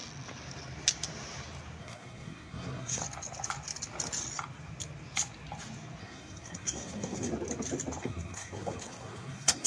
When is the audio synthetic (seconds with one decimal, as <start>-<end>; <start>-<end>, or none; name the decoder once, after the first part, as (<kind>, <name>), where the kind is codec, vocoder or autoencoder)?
1.8-3.0 (codec, SNAC); 6.0-7.3; 8.0-9.7